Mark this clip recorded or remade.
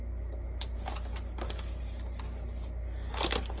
recorded